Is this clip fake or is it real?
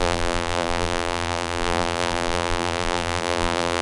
fake